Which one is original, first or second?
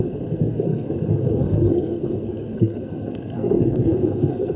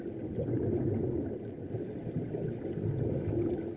second